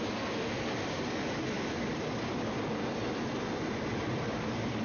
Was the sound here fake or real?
fake